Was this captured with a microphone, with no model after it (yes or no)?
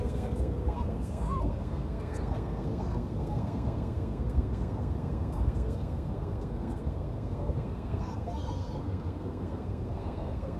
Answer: no